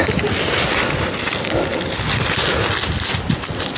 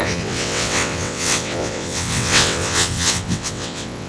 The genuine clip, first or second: first